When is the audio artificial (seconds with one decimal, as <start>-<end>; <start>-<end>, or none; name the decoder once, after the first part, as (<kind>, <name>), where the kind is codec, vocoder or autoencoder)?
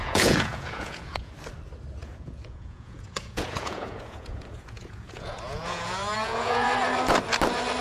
0.0-1.3 (vocoder, Vocos); 2.0-6.7